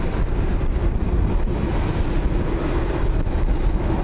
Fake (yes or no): no